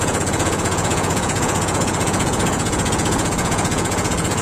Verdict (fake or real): fake